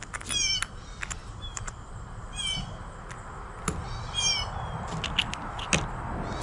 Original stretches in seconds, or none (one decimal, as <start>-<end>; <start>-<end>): 0.0-1.2; 1.9-6.4